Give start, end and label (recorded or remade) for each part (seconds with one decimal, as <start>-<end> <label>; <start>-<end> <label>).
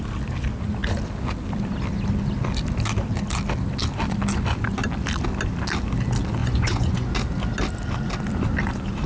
0.0-6.4 recorded; 6.4-7.1 remade; 7.1-9.1 recorded